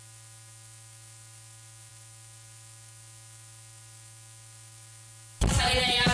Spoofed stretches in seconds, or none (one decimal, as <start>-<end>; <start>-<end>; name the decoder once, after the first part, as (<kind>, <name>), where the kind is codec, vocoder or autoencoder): none

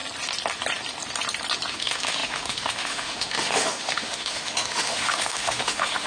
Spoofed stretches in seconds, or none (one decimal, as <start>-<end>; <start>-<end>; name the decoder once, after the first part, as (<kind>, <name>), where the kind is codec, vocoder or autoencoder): 1.7-6.1 (autoencoder, DAC-VAE)

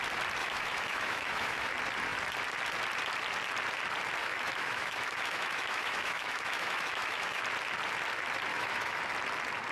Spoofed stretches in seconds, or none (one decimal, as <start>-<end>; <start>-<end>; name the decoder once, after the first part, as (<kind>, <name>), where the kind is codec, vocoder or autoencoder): 0.4-1.7 (autoencoder, DAC-VAE); 4.2-7.4; 8.5-9.0

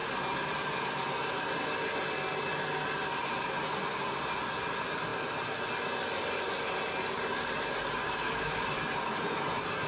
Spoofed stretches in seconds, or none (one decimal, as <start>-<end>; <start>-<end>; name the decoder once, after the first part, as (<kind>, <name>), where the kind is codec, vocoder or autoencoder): 8.0-8.6 (autoencoder, DAC-VAE)

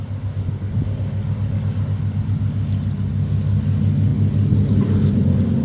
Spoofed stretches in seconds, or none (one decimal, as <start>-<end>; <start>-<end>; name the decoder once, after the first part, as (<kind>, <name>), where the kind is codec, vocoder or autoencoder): none

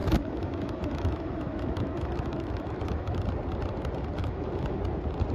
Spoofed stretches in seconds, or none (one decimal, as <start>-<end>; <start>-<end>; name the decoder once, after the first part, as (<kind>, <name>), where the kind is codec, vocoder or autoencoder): 0.0-3.2 (autoencoder, DAC-VAE); 4.2-4.8